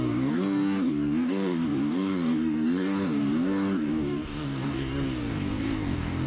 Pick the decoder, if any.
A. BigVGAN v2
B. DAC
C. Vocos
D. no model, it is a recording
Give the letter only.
B